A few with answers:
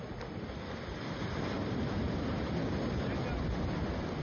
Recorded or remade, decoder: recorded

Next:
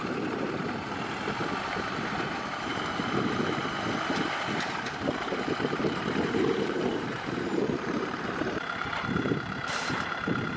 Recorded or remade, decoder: remade, vocoder, BigVGAN v2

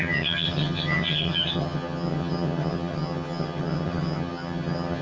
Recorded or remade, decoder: remade, vocoder, HiFi-GAN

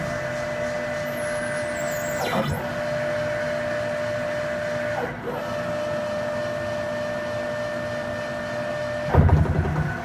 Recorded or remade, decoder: recorded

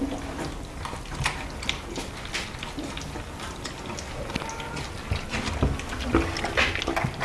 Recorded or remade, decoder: recorded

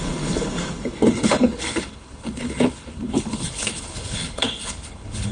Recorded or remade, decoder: remade, codec, HILCodec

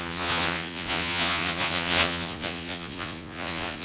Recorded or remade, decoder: remade, vocoder, Vocos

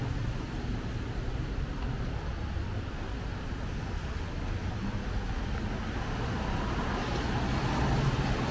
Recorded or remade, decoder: recorded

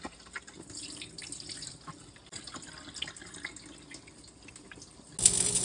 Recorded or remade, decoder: recorded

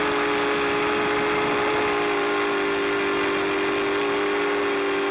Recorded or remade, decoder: recorded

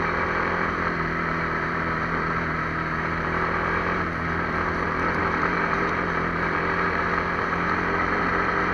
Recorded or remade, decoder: remade, vocoder, BigVGAN v2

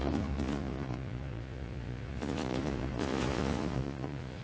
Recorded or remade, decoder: remade, vocoder, Vocos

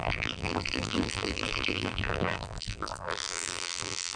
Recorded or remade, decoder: remade, vocoder, BigVGAN v2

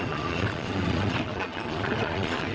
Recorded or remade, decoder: remade, vocoder, Vocos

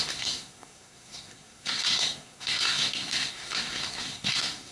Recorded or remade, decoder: remade, codec, SNAC